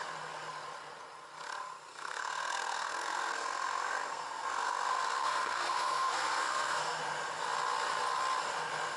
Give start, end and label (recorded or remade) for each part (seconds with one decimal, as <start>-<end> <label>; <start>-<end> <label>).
0.0-1.9 recorded; 1.9-7.0 remade; 7.0-9.0 recorded